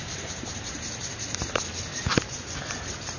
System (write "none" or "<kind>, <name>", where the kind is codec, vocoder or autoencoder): vocoder, BigVGAN v2